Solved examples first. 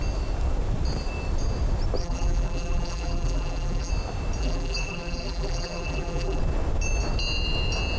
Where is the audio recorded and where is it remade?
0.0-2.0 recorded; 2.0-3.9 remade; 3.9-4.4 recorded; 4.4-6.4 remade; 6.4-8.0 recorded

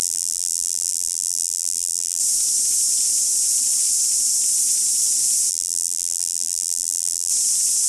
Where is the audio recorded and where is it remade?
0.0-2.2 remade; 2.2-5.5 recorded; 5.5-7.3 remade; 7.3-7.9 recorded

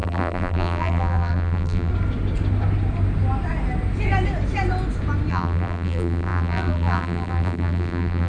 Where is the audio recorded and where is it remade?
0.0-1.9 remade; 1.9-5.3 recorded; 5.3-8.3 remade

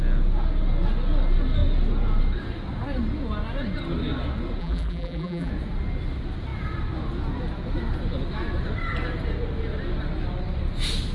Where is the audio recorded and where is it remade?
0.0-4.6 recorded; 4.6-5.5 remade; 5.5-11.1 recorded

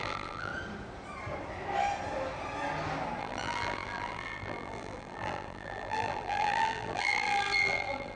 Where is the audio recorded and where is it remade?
0.0-0.5 remade; 0.5-3.2 recorded; 3.2-8.2 remade

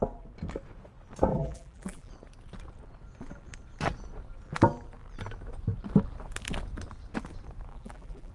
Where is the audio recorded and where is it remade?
0.0-1.3 recorded; 1.3-2.1 remade; 2.1-7.7 recorded; 7.7-8.3 remade